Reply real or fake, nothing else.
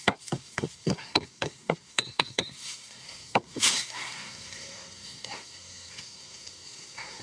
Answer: fake